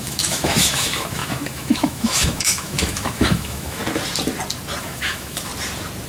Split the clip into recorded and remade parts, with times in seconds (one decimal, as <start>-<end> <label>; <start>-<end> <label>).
0.0-3.8 remade; 3.8-4.8 recorded; 4.8-5.5 remade; 5.5-6.1 recorded